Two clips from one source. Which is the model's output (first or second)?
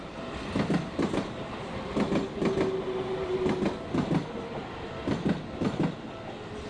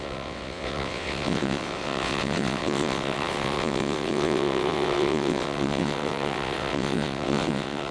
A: second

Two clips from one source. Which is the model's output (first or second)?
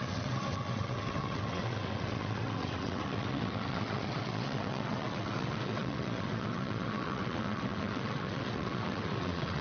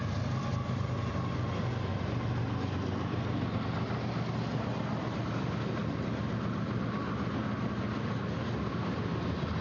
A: first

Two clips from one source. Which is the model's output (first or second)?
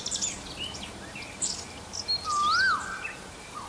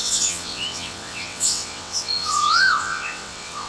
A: second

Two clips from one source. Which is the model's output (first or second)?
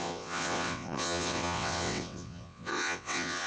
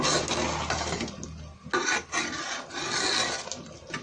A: first